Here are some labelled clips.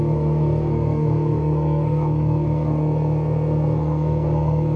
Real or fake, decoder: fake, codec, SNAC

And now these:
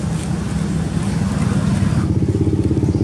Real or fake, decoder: real